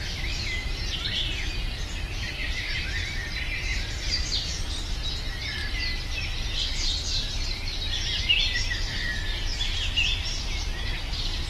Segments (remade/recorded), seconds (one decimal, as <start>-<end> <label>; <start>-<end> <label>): 0.0-2.4 recorded; 2.4-2.9 remade; 2.9-3.7 recorded; 3.7-4.8 remade; 4.8-11.5 recorded